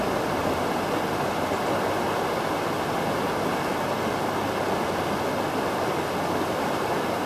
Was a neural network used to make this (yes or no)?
no